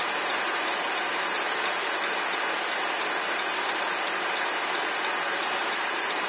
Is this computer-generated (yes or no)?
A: no